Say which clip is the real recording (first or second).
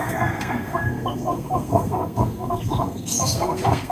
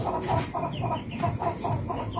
second